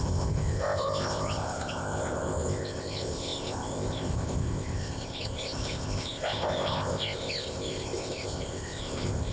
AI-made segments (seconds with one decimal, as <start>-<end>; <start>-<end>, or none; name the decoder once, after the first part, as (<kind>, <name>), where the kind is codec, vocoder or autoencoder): 0.0-9.3 (codec, ZipCodec)